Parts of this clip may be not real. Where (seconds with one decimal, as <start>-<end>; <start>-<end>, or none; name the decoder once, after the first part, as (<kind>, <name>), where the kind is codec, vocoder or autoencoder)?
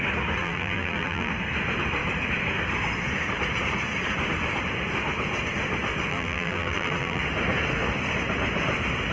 0.4-1.3 (vocoder, BigVGAN v2); 6.1-7.2